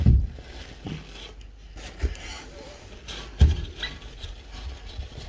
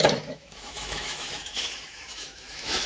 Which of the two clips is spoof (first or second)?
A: second